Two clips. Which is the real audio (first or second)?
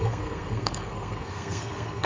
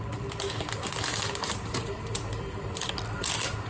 second